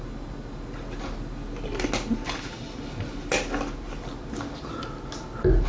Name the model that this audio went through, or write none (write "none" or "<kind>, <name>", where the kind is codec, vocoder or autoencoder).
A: none